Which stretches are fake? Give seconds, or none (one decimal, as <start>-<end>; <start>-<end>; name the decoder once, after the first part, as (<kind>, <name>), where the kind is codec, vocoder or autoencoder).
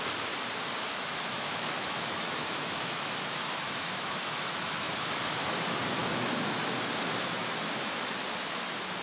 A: 0.9-5.6 (autoencoder, DAC-VAE); 6.0-6.6; 7.4-8.0